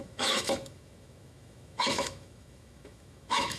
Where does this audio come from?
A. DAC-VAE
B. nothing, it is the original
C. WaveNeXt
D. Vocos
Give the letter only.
A